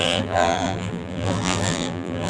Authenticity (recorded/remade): remade